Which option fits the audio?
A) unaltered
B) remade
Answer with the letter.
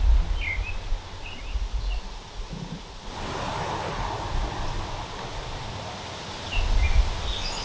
A